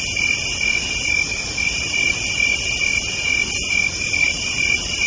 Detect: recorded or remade recorded